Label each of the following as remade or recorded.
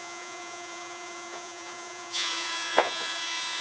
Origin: remade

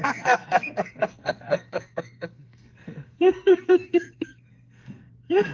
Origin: remade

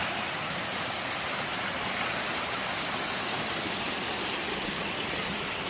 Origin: recorded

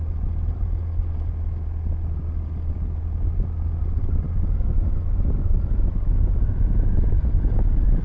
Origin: recorded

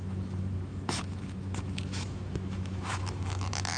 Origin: remade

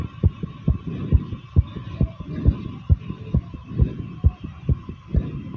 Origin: recorded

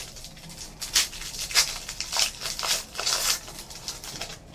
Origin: recorded